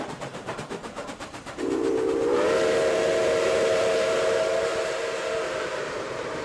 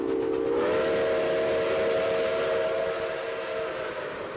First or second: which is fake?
first